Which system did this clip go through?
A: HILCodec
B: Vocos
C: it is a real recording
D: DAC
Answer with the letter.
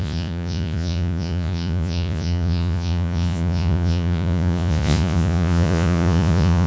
B